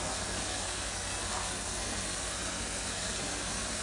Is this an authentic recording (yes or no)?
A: no